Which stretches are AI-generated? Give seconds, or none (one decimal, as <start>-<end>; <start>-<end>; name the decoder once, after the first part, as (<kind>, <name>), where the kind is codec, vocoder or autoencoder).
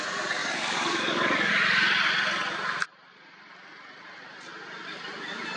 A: 0.4-1.5 (codec, DAC)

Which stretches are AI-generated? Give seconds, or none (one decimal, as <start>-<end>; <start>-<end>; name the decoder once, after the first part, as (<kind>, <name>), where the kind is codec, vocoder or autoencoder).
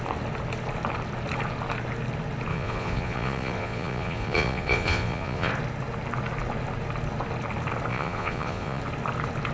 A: 2.5-5.5 (vocoder, Vocos); 7.9-8.8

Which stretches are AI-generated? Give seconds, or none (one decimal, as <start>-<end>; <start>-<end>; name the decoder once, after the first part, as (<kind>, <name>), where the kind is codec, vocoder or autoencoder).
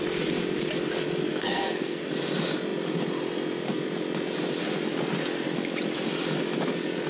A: 1.3-2.1 (codec, SNAC)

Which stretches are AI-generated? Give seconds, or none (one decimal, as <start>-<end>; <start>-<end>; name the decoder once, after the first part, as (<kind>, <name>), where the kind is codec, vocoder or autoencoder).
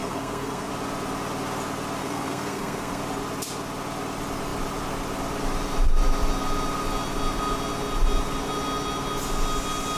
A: 0.0-0.7 (codec, SNAC); 2.0-3.0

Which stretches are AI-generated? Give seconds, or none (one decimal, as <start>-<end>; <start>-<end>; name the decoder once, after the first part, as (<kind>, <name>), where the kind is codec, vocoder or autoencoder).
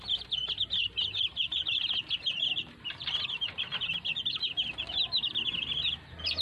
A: 0.0-0.4 (vocoder, BigVGAN v2); 3.3-3.7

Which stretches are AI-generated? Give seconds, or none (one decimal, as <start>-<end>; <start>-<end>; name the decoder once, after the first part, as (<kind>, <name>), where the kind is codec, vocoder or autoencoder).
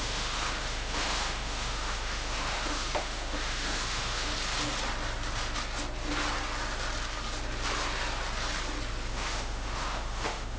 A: 0.0-4.3 (autoencoder, DAC-VAE); 9.1-10.6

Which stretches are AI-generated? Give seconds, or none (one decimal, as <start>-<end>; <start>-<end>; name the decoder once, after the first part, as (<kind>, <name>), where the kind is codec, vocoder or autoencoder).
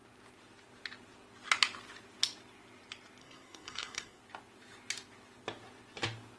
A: 3.2-4.2 (codec, SNAC)